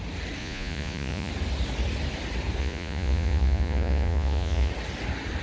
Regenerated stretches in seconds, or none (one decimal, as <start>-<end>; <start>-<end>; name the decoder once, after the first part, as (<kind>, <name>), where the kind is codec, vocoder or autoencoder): 0.4-1.3 (vocoder, Vocos); 2.6-4.7